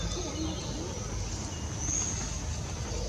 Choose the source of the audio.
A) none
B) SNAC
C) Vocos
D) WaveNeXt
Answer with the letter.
A